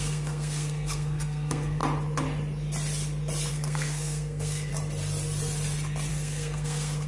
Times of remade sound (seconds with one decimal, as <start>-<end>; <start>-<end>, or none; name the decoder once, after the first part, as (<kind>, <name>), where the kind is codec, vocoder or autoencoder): 0.0-1.8 (codec, SNAC); 3.5-4.7; 6.1-7.1

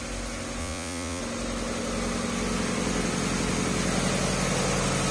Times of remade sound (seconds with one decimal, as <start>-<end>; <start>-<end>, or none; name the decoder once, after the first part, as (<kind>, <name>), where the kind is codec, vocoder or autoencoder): 0.6-1.2 (vocoder, Vocos)

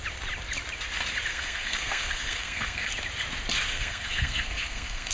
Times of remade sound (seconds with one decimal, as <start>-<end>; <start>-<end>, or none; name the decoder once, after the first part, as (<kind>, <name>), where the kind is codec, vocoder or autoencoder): 1.3-2.9 (codec, SNAC); 3.7-5.1